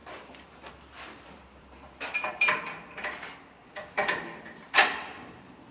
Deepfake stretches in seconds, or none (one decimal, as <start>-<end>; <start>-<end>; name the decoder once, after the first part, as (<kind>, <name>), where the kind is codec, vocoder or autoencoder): 0.7-5.7 (vocoder, BigVGAN v2)